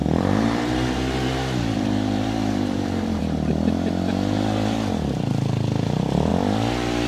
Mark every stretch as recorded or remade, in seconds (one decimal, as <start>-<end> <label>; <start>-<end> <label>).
0.0-3.2 remade; 3.2-7.1 recorded